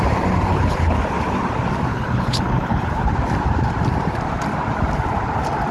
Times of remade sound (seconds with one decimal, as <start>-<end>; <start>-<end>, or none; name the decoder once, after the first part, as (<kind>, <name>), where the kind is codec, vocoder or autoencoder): 0.5-1.0 (codec, HILCodec); 1.9-3.1